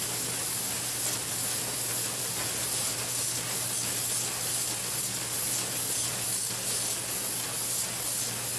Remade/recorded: recorded